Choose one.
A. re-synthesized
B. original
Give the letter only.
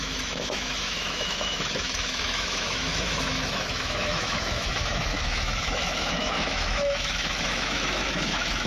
A